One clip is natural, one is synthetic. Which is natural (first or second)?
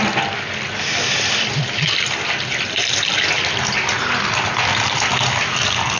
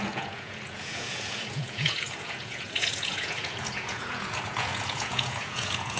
first